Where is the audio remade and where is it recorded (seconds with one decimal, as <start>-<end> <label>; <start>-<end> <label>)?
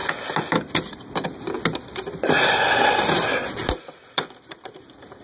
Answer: 0.0-5.2 recorded